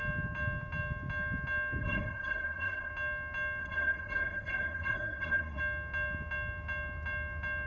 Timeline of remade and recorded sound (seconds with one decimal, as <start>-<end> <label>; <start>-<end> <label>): 0.0-1.8 recorded; 1.8-2.9 remade; 2.9-3.6 recorded; 3.6-5.6 remade; 5.6-7.7 recorded